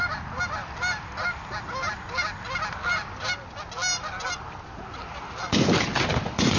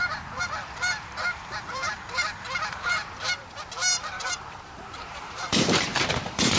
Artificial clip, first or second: second